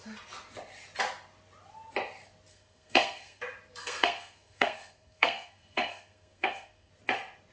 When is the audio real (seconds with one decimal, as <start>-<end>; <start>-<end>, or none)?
0.0-2.5; 3.4-3.8; 6.9-7.5